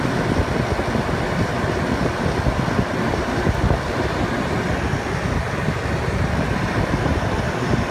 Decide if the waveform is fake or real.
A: real